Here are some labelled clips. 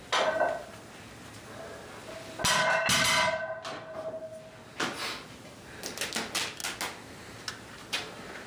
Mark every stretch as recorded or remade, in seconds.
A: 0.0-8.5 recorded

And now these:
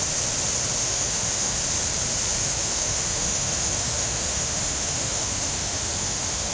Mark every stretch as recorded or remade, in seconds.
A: 0.0-0.8 recorded; 0.8-1.6 remade; 1.6-2.4 recorded; 2.4-6.5 remade

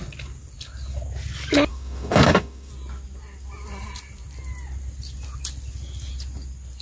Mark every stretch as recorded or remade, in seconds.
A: 0.0-1.7 recorded; 1.7-2.7 remade; 2.7-6.8 recorded

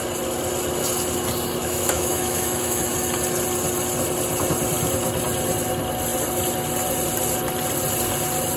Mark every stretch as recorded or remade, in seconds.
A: 0.0-1.6 recorded; 1.6-2.9 remade; 2.9-8.6 recorded

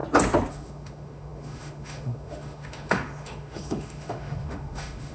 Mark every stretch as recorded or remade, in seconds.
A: 0.0-0.5 recorded; 0.5-5.1 remade